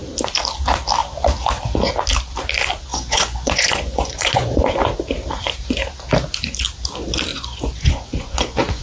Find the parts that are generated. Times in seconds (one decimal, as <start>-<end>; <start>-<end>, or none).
2.9-4.7; 7.3-8.8